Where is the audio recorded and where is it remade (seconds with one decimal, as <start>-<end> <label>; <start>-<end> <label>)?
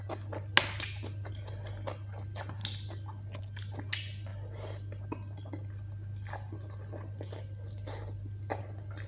0.0-9.1 recorded